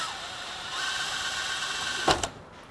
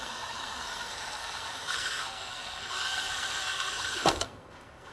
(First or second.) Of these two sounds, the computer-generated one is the second